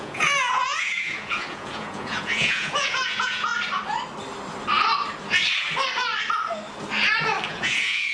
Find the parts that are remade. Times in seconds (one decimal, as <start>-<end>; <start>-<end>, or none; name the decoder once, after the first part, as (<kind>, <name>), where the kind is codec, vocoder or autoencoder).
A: 0.0-3.5 (vocoder, Vocos); 7.5-8.1